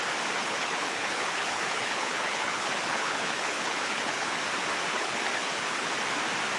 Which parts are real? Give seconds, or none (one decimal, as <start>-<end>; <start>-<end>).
0.0-0.4; 4.4-4.9; 5.9-6.6